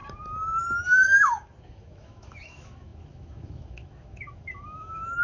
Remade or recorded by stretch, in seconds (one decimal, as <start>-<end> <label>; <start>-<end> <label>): 0.0-0.8 recorded; 0.8-5.2 remade